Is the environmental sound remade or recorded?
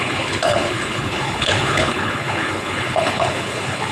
remade